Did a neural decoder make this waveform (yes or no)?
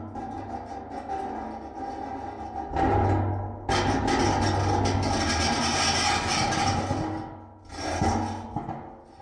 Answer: no